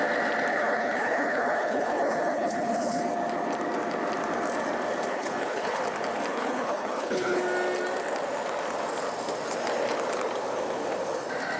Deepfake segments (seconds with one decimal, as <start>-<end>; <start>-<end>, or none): 0.5-3.0; 5.1-5.8; 6.3-7.4